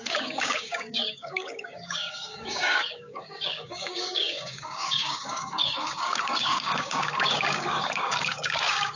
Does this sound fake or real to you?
fake